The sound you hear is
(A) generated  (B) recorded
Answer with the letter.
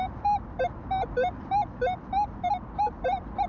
B